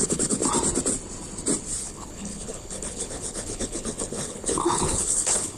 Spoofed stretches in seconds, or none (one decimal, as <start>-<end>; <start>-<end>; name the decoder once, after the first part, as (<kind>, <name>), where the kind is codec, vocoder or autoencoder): 0.0-0.4 (codec, HILCodec); 1.8-5.6